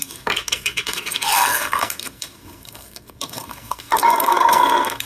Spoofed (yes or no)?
yes